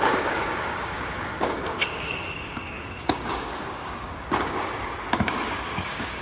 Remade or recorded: remade